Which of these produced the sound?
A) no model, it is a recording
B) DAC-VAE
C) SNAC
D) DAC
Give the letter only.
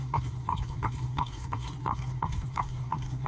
C